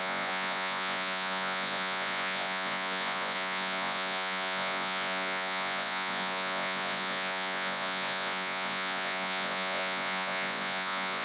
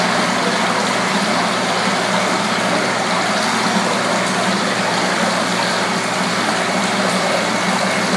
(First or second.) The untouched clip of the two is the second